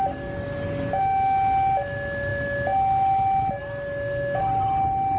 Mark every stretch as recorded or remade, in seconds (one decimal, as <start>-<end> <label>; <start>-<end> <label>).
0.0-5.2 recorded